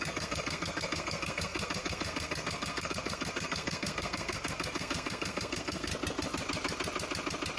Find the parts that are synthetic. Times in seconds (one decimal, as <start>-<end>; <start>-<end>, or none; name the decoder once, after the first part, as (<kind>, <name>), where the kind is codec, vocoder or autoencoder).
0.0-5.9 (codec, SNAC)